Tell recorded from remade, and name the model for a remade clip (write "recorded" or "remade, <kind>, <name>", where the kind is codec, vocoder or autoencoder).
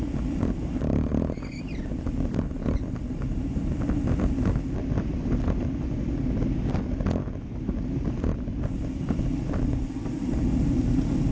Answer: recorded